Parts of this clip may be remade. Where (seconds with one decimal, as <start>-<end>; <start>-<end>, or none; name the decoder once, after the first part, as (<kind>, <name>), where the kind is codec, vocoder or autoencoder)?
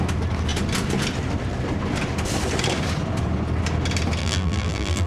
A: 4.2-5.1 (vocoder, BigVGAN v2)